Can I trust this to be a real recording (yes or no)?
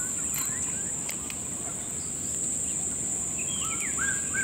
yes